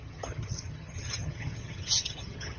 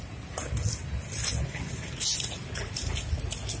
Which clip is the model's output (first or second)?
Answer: first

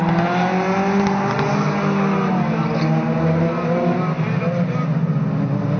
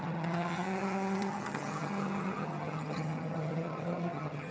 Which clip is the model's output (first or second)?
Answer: second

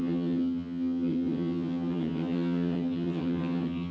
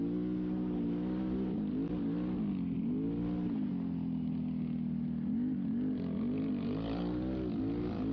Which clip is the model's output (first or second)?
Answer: first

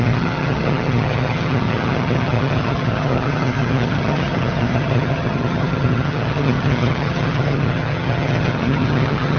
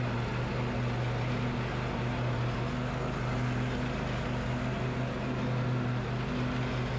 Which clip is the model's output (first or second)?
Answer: first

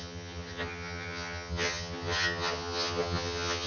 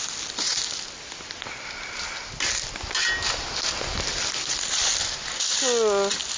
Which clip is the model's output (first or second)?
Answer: first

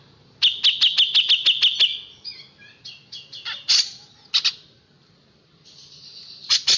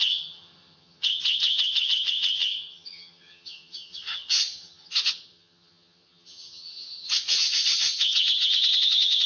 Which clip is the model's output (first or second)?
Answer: second